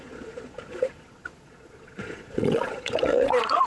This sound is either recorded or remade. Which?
remade